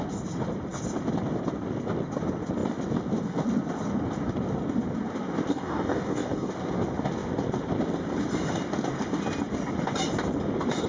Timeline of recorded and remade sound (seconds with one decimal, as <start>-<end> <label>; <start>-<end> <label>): 0.0-5.5 recorded; 5.5-6.5 remade; 6.5-10.9 recorded